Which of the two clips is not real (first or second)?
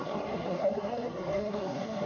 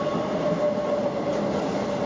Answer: first